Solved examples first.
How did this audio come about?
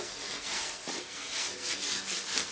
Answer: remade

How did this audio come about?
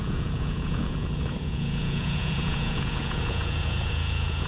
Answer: remade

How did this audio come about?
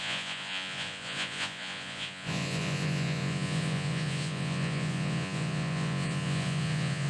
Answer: remade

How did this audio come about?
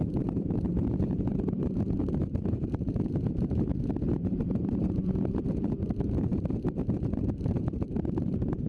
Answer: remade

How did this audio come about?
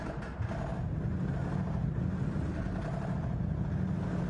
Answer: recorded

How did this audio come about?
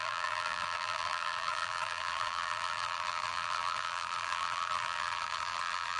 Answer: remade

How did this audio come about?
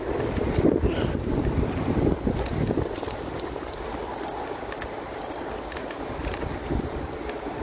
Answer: recorded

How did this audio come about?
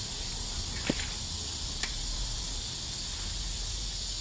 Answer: recorded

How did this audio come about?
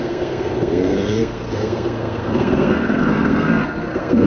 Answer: remade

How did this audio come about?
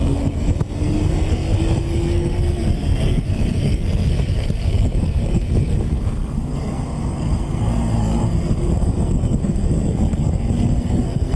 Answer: remade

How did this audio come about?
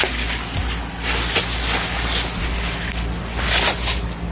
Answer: recorded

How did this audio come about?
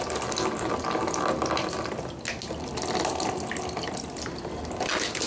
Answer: recorded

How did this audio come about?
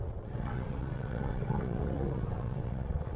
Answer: remade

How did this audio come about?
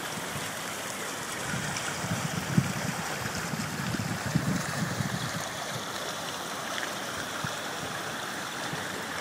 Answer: remade